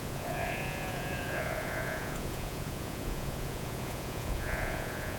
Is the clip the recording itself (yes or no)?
no